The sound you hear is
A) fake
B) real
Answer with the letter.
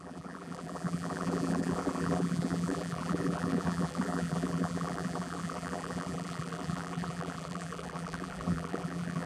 A